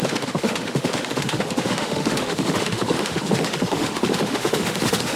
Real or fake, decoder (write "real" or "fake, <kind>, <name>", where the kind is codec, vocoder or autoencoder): fake, autoencoder, DAC-VAE